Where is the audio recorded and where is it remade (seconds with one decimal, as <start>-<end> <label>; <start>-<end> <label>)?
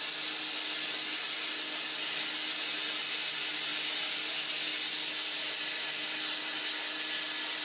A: 0.0-7.6 recorded